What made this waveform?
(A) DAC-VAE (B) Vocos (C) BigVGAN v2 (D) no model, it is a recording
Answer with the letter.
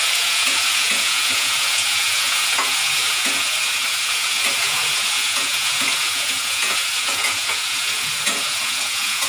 B